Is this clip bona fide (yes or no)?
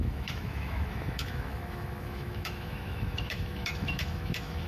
no